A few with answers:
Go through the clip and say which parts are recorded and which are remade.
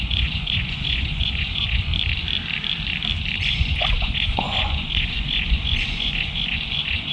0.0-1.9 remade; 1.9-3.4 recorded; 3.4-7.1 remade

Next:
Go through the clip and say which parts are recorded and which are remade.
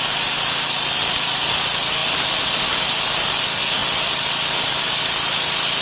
0.0-5.8 recorded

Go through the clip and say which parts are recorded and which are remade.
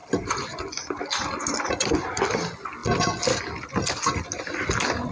0.0-5.1 recorded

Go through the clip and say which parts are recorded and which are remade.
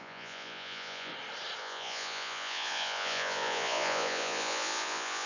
0.0-1.1 remade; 1.1-1.6 recorded; 1.6-5.3 remade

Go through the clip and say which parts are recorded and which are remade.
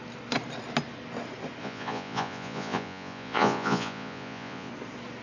0.0-1.6 recorded; 1.6-4.7 remade; 4.7-5.2 recorded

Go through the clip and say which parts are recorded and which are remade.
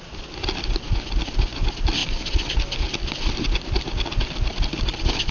0.0-5.3 recorded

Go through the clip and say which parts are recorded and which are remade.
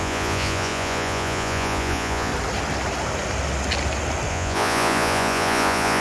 0.0-2.3 remade; 2.3-4.3 recorded; 4.3-6.0 remade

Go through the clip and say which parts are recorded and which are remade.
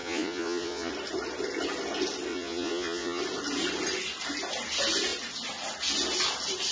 0.0-0.9 remade; 0.9-2.3 recorded; 2.3-3.2 remade; 3.2-6.7 recorded